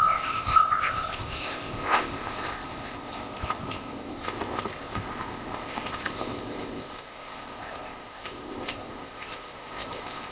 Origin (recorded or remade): remade